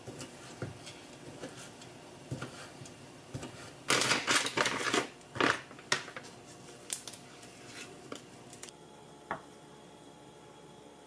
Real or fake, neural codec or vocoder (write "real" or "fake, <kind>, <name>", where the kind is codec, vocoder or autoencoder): real